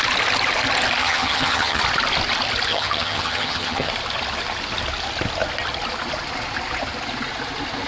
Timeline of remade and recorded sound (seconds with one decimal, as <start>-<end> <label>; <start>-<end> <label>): 0.0-1.0 recorded; 1.0-1.8 remade; 1.8-2.7 recorded; 2.7-3.9 remade; 3.9-7.9 recorded